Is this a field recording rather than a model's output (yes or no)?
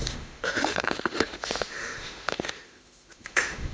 no